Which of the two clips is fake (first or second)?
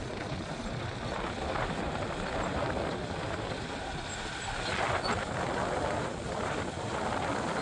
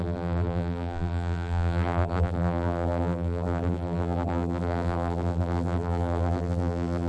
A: second